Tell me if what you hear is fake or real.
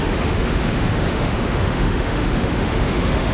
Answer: fake